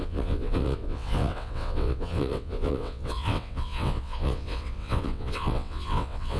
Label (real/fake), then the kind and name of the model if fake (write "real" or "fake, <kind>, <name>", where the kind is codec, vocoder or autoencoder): fake, vocoder, WaveNeXt